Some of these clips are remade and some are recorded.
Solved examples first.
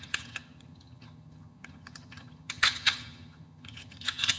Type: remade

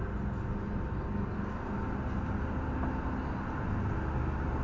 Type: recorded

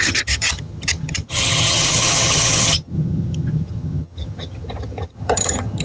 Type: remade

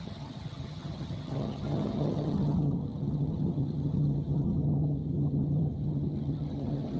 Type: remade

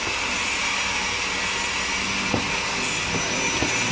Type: recorded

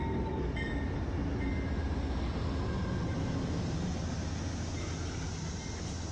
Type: recorded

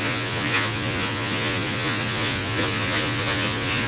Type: remade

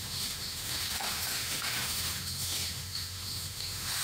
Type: remade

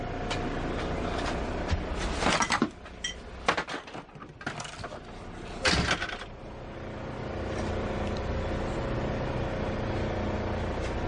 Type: recorded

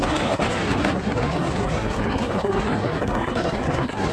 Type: remade